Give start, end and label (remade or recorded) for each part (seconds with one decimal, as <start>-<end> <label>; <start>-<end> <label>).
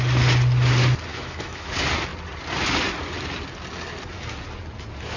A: 0.0-1.1 recorded; 1.1-1.7 remade; 1.7-5.2 recorded